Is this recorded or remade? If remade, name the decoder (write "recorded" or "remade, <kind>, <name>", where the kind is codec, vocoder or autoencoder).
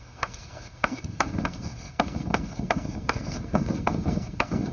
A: remade, codec, SNAC